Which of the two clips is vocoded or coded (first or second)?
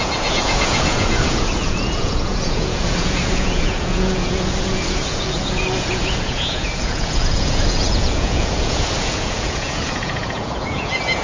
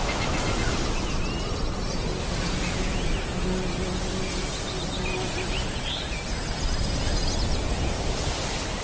first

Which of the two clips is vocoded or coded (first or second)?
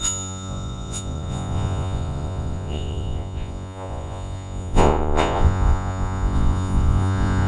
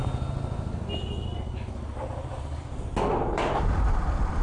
first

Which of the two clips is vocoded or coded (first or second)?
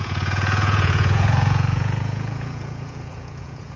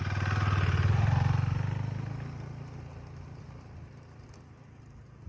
first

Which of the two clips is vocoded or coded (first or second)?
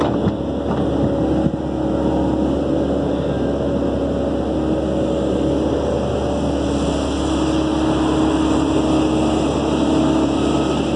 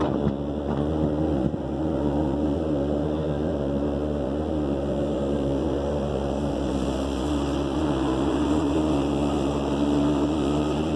second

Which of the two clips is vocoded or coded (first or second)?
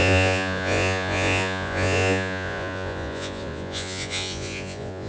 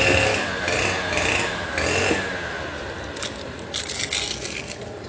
first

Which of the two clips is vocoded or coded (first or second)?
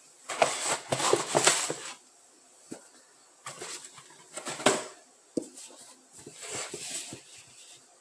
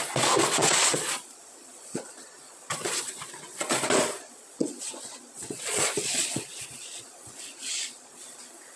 second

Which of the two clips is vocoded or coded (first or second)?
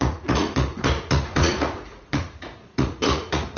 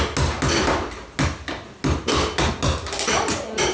first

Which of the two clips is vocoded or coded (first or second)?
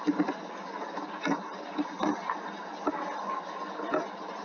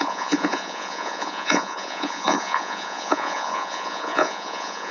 second